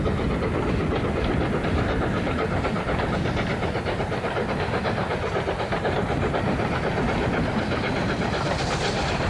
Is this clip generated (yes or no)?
no